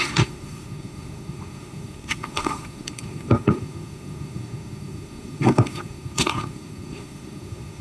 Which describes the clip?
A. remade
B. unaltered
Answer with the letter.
A